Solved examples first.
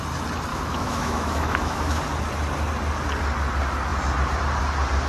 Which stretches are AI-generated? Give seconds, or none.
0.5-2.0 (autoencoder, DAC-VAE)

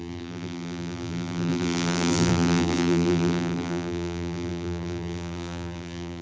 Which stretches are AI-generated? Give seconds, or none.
0.0-6.2 (vocoder, BigVGAN v2)